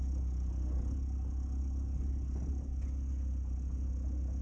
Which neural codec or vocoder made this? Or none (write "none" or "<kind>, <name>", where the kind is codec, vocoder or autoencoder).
none